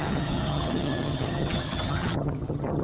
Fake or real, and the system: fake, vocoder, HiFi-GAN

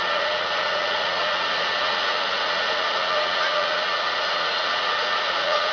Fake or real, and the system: fake, vocoder, Vocos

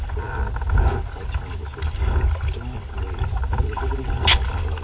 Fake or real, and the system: real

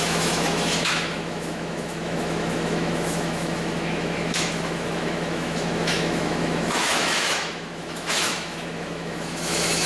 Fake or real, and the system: fake, autoencoder, DAC-VAE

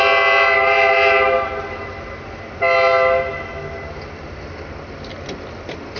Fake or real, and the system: real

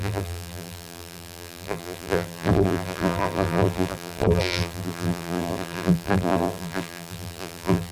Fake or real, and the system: fake, vocoder, BigVGAN v2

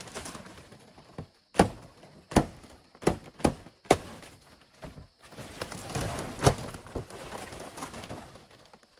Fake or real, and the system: real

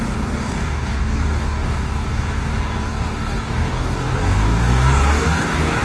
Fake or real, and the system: fake, codec, DAC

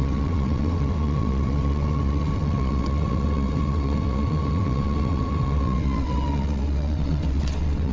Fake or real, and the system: fake, vocoder, WaveNeXt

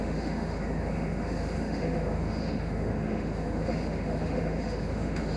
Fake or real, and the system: fake, autoencoder, DAC-VAE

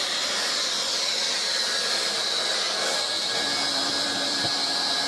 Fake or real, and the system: fake, vocoder, BigVGAN v2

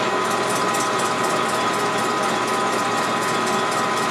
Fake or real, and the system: real